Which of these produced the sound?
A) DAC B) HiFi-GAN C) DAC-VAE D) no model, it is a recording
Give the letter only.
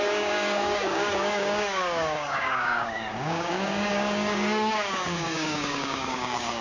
A